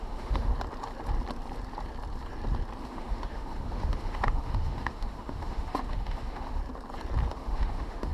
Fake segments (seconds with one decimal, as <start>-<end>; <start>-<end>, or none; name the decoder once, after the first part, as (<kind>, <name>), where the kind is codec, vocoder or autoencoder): 0.0-0.5 (autoencoder, DAC-VAE); 2.8-6.6; 7.3-8.1